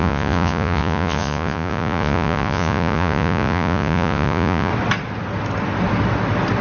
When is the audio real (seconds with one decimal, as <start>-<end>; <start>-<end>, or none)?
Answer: 4.7-6.6